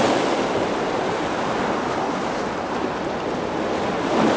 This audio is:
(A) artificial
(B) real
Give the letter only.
B